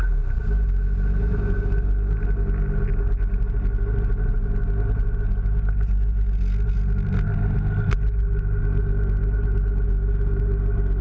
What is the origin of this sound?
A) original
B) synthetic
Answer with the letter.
A